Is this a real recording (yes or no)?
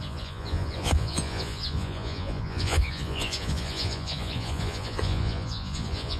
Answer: no